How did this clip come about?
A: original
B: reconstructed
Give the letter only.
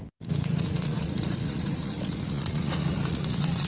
B